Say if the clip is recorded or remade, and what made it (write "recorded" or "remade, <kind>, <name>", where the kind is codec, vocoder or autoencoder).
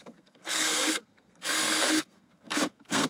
remade, codec, SNAC